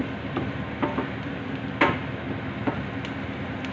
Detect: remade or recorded recorded